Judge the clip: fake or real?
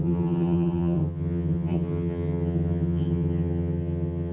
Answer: fake